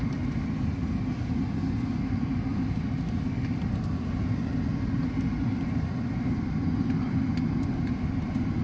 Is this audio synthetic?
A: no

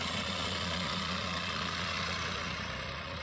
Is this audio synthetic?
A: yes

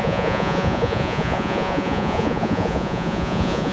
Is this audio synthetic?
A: yes